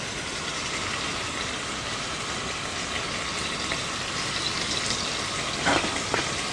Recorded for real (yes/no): yes